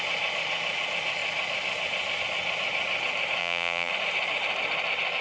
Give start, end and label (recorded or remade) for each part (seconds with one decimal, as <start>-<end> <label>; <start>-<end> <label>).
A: 0.0-3.4 recorded; 3.4-3.9 remade; 3.9-5.2 recorded